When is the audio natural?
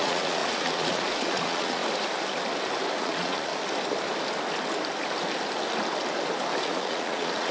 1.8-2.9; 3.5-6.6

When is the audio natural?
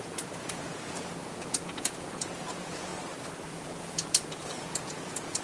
2.9-3.5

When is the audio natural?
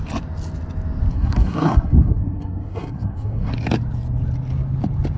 0.0-1.1; 3.5-5.2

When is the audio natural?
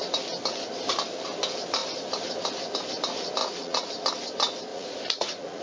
0.0-3.4; 3.9-4.7